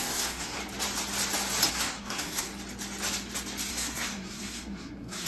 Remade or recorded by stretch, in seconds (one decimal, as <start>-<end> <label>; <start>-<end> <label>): 0.0-0.6 remade; 0.6-1.7 recorded; 1.7-2.5 remade; 2.5-3.7 recorded; 3.7-5.3 remade